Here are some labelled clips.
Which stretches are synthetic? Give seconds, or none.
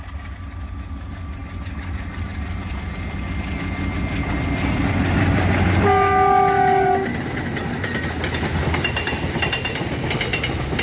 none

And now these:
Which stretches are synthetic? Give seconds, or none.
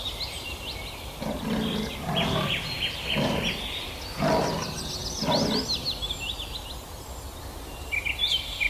none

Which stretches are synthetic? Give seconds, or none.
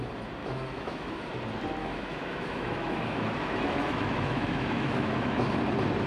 0.4-1.3 (autoencoder, DAC-VAE); 1.8-5.5